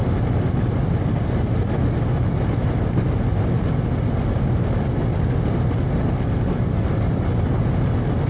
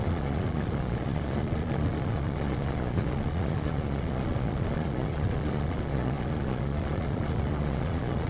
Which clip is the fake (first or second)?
second